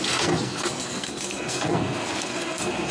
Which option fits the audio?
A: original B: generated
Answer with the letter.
B